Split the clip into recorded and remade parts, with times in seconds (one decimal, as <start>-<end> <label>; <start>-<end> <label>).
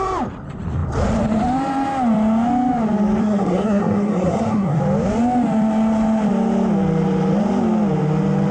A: 0.0-3.2 recorded; 3.2-4.8 remade; 4.8-8.5 recorded